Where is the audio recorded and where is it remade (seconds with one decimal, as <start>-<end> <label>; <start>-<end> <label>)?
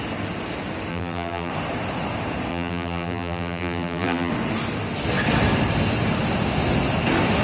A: 0.0-0.9 recorded; 0.9-1.5 remade; 1.5-2.5 recorded; 2.5-4.3 remade; 4.3-7.4 recorded